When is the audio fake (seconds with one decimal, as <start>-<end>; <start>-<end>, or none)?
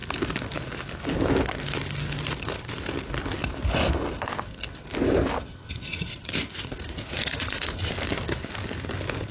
5.9-7.9